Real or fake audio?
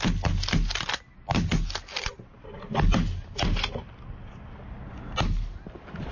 real